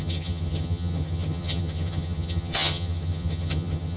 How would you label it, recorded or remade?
remade